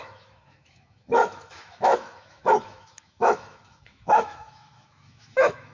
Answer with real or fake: fake